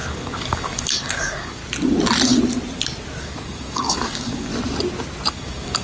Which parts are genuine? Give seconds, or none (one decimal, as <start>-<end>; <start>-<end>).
1.6-3.2; 4.5-5.3